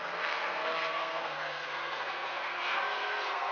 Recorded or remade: remade